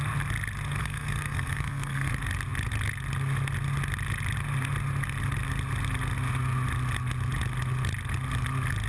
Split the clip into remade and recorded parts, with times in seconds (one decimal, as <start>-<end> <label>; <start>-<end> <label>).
0.0-0.8 recorded; 0.8-2.1 remade; 2.1-8.9 recorded